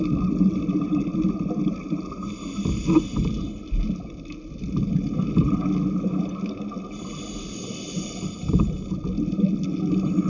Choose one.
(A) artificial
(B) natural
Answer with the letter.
B